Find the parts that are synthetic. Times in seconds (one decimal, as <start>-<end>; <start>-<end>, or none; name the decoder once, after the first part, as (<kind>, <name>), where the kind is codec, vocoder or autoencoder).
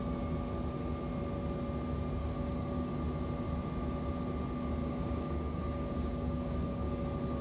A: 2.2-2.9 (codec, DAC); 4.8-6.9